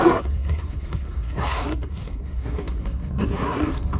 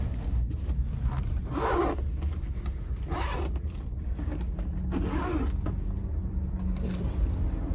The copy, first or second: first